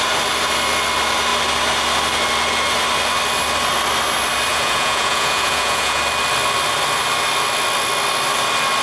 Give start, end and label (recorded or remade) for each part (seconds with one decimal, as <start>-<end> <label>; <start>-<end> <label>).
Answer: 0.0-4.5 recorded; 4.5-6.0 remade; 6.0-8.8 recorded